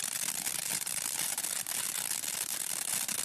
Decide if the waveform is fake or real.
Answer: real